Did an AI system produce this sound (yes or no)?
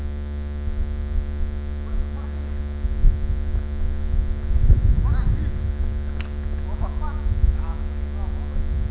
no